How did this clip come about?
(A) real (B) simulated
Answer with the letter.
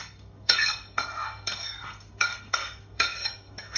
B